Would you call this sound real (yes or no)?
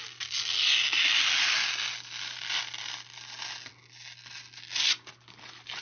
yes